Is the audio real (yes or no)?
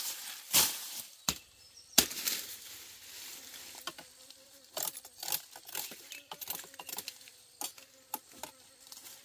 yes